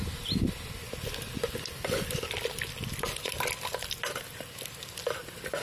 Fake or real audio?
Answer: real